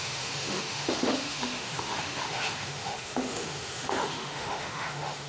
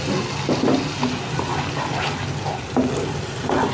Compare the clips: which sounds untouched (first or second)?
second